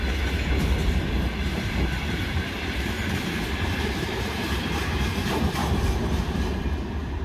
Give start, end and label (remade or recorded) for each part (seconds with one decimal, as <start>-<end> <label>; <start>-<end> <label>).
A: 0.0-0.8 recorded; 0.8-5.1 remade; 5.1-5.6 recorded; 5.6-6.2 remade; 6.2-7.2 recorded